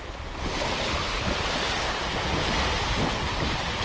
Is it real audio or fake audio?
real